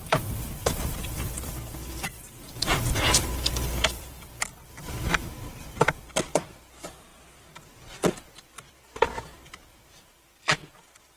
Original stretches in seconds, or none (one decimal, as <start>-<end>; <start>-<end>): none